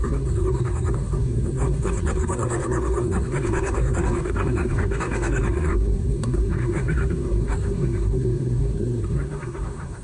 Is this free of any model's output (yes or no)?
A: no